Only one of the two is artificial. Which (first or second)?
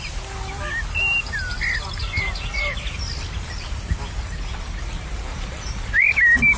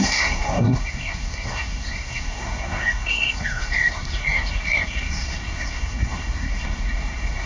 second